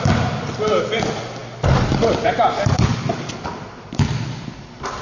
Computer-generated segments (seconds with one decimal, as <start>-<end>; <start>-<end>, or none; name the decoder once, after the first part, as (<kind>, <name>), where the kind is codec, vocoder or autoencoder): none